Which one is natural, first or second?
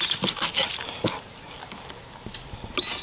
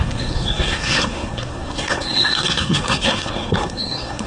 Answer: first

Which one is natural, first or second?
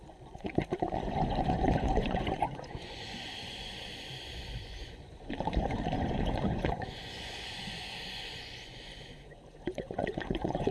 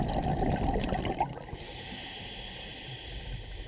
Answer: second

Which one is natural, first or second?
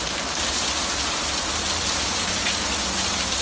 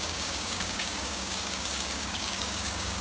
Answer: first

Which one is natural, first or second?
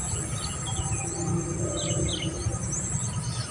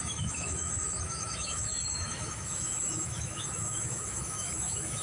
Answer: first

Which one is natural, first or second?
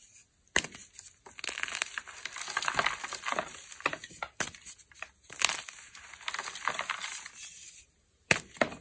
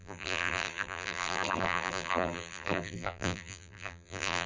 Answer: first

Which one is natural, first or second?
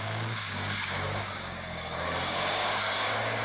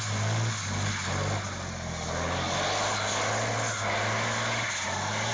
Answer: second